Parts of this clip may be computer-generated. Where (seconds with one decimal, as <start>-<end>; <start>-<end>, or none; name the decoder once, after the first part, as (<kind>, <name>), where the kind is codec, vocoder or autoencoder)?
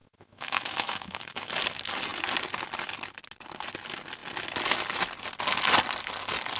0.0-1.5 (autoencoder, DAC-VAE)